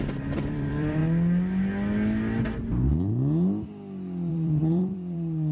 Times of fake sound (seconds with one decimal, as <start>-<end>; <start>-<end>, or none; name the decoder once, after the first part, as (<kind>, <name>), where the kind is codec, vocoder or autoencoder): 0.0-1.0 (vocoder, BigVGAN v2); 4.3-5.5